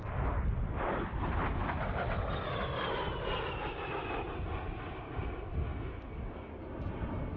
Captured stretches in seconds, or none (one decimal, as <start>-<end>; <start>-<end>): 0.0-7.4